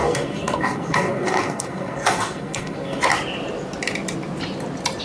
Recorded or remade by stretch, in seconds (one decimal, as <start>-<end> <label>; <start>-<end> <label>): 0.0-3.0 remade; 3.0-5.0 recorded